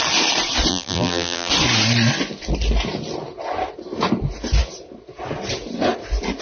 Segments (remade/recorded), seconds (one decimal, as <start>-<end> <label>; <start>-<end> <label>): 0.0-0.7 recorded; 0.7-1.5 remade; 1.5-6.4 recorded